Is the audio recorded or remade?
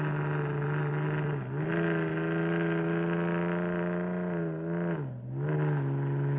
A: recorded